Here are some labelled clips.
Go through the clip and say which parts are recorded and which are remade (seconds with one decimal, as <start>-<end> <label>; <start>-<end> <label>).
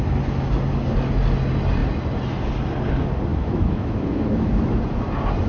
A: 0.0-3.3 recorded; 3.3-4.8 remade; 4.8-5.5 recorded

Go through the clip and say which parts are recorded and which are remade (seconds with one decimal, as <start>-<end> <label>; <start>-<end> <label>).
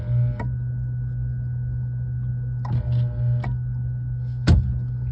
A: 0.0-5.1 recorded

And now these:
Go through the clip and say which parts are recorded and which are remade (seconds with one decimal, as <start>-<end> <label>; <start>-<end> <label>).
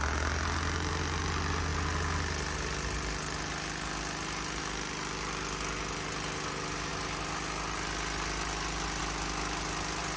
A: 0.0-10.2 recorded